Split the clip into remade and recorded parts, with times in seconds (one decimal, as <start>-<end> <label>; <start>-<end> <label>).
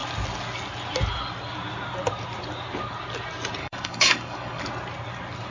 0.0-3.6 recorded; 3.6-4.6 remade; 4.6-5.5 recorded